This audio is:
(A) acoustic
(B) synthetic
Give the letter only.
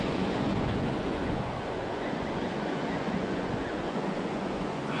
B